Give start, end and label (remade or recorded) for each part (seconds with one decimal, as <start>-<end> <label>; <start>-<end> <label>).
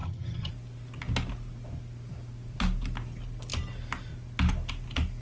0.0-0.5 remade; 0.5-5.2 recorded